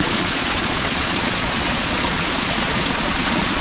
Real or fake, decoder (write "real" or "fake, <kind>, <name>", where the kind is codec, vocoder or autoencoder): fake, vocoder, Vocos